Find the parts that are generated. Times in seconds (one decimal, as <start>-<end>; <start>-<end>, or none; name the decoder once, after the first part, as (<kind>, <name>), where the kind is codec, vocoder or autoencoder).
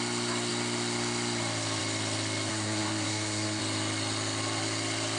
2.5-3.6 (codec, SNAC)